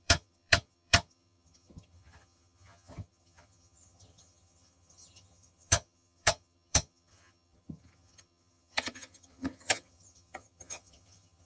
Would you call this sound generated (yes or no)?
yes